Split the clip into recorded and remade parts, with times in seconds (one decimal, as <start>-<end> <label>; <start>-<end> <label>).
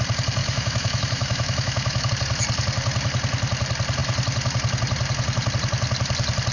0.0-0.4 recorded; 0.4-2.1 remade; 2.1-6.5 recorded